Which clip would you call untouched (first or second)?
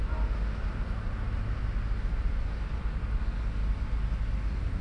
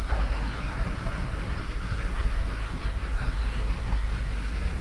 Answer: first